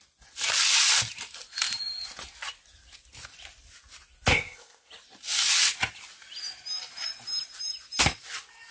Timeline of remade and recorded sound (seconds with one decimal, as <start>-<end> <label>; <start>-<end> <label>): 0.0-4.3 recorded; 4.3-4.9 remade; 4.9-8.7 recorded